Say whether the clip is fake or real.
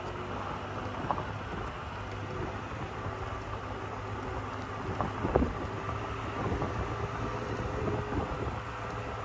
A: real